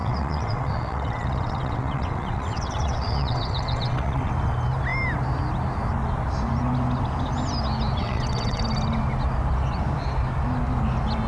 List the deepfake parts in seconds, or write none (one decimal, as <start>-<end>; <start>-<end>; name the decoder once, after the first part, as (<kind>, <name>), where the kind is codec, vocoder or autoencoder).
0.0-4.3 (vocoder, WaveNeXt); 8.0-8.6